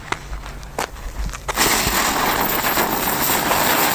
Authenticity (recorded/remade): recorded